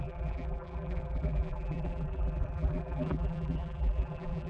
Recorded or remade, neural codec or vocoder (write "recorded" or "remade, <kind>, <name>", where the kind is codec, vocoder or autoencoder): remade, vocoder, BigVGAN v2